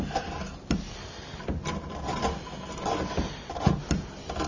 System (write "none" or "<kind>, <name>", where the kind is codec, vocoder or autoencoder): none